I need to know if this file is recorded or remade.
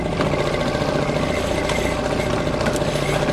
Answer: recorded